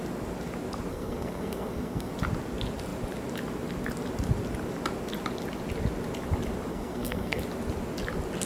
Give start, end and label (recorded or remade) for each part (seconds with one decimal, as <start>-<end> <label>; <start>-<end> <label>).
0.0-0.9 recorded; 0.9-2.1 remade; 2.1-6.7 recorded; 6.7-7.4 remade; 7.4-8.5 recorded